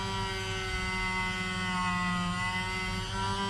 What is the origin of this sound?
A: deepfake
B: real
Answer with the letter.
B